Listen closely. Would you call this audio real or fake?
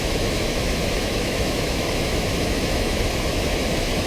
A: fake